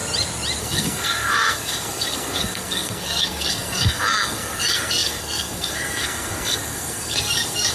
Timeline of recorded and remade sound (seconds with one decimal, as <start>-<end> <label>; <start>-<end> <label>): 0.0-0.6 recorded; 0.6-7.7 remade